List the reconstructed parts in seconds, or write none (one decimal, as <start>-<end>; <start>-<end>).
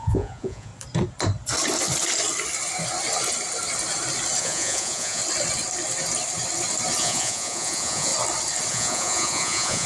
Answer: 0.0-0.7; 4.4-5.2; 7.0-8.1; 8.7-9.9